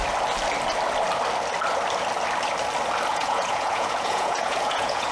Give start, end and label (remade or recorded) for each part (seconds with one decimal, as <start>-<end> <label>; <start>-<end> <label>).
0.0-3.1 recorded; 3.1-5.1 remade